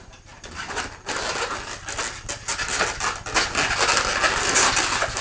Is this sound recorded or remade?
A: recorded